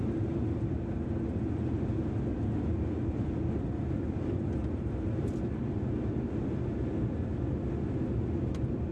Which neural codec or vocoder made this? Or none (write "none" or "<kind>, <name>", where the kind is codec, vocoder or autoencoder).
none